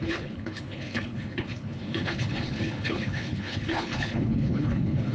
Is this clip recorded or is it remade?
remade